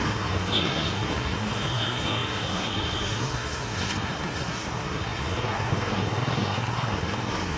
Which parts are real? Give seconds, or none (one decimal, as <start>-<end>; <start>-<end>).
none